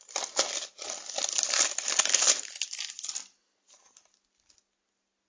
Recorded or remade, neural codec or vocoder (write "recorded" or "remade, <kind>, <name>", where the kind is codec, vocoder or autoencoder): recorded